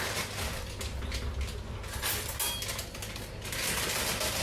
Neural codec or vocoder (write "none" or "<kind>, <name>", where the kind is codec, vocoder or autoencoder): none